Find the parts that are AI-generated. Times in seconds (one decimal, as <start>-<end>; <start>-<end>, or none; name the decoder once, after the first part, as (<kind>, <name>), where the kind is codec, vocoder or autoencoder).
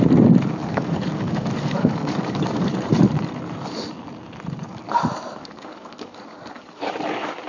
0.6-2.7 (codec, DAC); 4.6-6.9